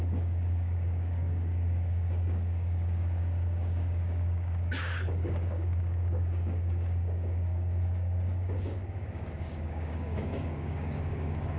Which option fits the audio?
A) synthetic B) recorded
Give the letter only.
A